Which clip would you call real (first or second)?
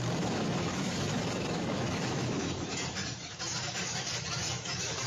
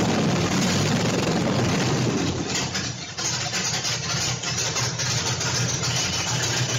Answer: second